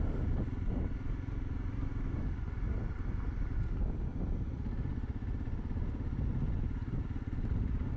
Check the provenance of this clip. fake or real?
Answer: real